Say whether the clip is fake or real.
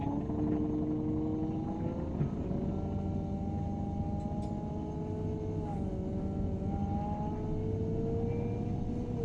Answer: real